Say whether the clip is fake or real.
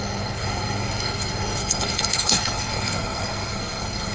fake